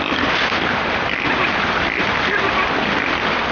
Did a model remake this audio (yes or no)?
yes